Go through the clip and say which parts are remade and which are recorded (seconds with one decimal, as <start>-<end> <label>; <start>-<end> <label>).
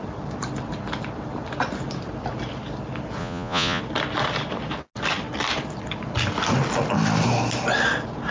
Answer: 0.0-3.2 recorded; 3.2-3.8 remade; 3.8-8.3 recorded